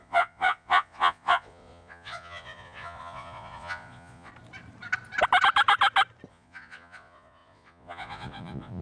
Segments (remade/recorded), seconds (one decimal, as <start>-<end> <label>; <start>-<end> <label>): 0.0-4.3 remade; 4.3-6.3 recorded; 6.3-8.8 remade